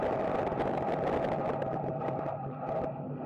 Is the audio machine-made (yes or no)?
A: no